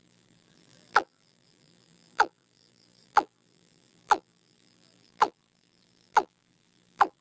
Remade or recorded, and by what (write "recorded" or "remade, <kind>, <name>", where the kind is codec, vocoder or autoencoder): remade, vocoder, BigVGAN v2